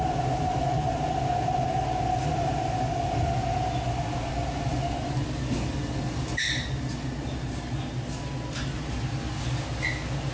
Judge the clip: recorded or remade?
recorded